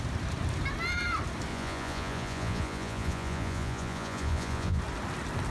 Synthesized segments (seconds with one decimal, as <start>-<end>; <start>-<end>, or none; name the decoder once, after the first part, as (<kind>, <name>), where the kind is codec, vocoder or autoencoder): 1.5-4.8 (vocoder, Vocos)